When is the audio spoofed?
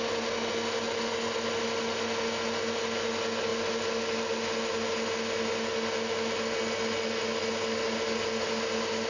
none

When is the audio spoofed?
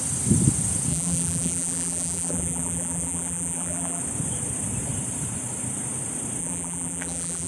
0.9-4.0 (vocoder, BigVGAN v2); 6.4-7.5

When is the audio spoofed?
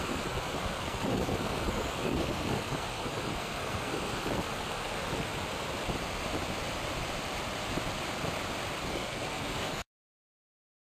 0.0-5.3 (codec, SNAC); 8.9-10.9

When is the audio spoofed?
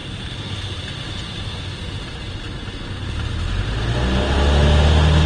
0.0-1.1 (vocoder, BigVGAN v2)